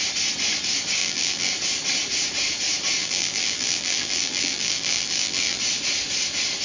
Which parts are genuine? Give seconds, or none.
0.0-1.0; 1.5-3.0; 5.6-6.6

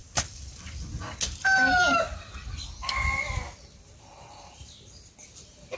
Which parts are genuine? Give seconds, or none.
0.0-5.8

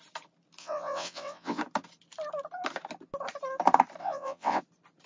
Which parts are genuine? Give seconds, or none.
0.0-0.6; 1.6-4.0; 4.6-5.1